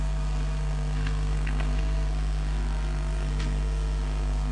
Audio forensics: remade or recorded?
remade